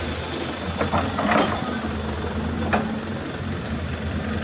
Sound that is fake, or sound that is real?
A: real